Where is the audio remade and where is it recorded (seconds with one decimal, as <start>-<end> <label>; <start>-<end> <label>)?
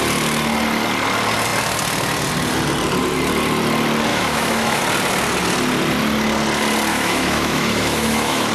0.0-4.1 recorded; 4.1-4.8 remade; 4.8-6.9 recorded; 6.9-8.5 remade